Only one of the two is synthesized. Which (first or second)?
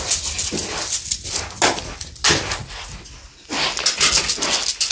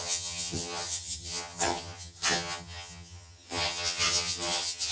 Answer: second